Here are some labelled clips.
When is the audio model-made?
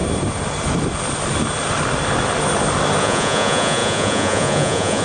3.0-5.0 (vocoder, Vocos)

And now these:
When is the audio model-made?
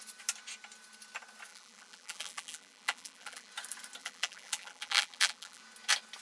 1.5-3.5 (vocoder, BigVGAN v2); 4.0-5.6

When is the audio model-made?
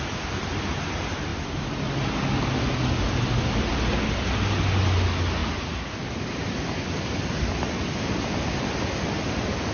none